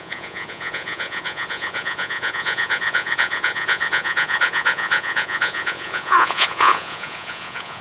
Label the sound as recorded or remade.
remade